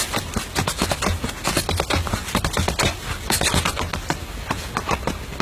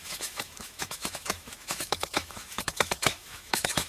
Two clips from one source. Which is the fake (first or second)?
second